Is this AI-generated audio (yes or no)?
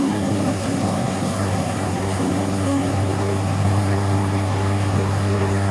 yes